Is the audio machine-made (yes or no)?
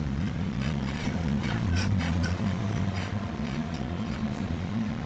yes